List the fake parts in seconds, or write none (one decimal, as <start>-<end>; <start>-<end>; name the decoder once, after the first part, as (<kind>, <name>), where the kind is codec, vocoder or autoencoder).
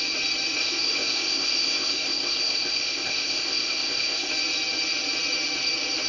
0.6-4.3 (codec, ZipCodec)